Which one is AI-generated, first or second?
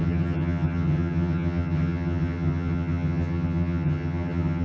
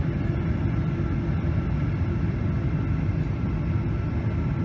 first